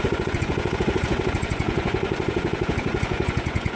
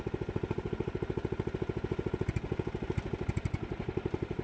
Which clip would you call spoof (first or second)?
first